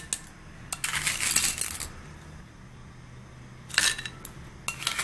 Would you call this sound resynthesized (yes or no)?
no